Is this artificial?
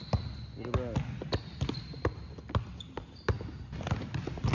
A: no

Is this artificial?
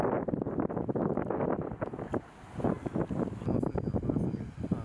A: no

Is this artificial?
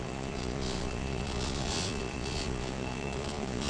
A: yes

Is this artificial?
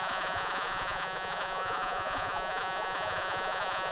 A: yes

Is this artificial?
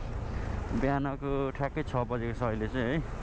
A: no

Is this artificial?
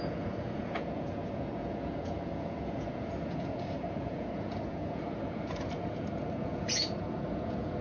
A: yes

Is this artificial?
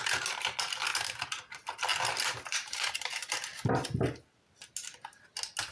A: no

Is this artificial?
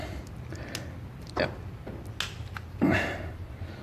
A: no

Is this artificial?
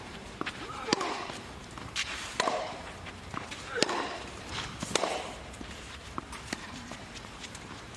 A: yes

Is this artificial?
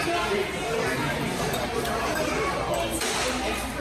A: no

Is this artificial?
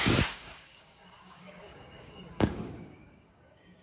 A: yes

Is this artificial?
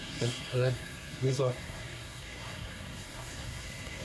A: yes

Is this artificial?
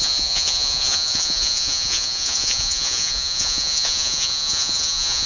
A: yes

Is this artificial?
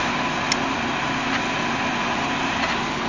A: no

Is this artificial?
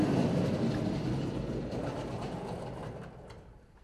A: yes